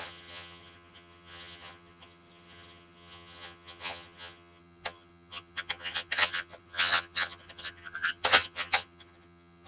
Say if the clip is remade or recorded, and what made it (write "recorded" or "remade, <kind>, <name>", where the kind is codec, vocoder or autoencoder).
remade, vocoder, HiFi-GAN